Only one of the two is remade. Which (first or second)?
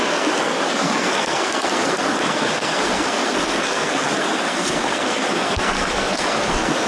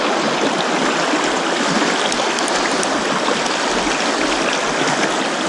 first